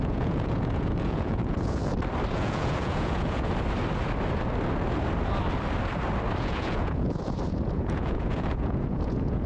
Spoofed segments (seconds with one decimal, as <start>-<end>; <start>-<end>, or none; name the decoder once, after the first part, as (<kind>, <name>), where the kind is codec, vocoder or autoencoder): 0.0-1.8 (vocoder, Vocos); 2.3-3.5; 6.4-9.5